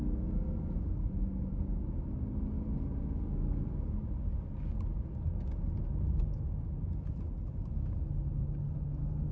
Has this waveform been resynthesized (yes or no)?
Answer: no